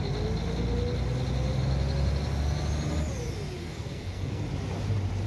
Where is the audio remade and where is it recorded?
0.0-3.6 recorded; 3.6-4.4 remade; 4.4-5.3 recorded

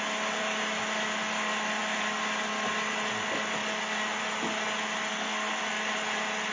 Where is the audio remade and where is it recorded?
0.0-5.1 recorded; 5.1-5.6 remade; 5.6-6.5 recorded